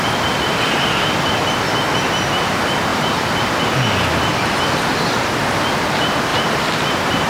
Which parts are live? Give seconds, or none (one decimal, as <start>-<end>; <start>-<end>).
0.0-2.9; 3.6-6.3